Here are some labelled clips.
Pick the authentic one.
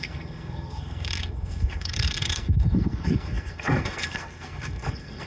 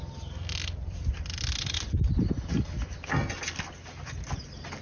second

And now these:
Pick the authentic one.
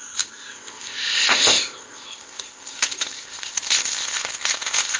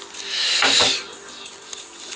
second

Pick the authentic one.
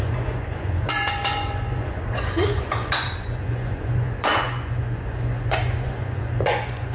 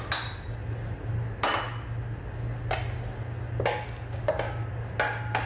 second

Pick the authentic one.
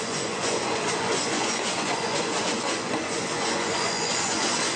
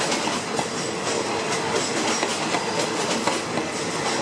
second